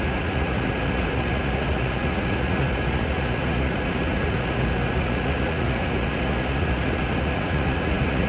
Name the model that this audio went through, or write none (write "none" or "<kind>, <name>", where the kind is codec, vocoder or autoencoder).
vocoder, Vocos